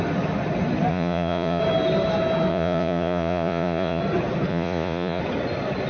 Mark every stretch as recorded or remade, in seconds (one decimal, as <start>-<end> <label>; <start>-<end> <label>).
0.0-0.9 recorded; 0.9-1.6 remade; 1.6-2.5 recorded; 2.5-4.0 remade; 4.0-4.5 recorded; 4.5-5.2 remade; 5.2-5.9 recorded